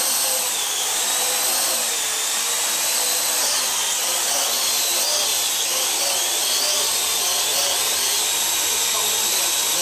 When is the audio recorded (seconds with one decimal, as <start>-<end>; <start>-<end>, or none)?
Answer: 0.0-9.8